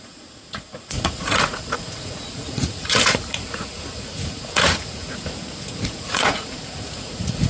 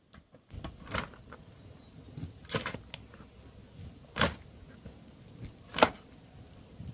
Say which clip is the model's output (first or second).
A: first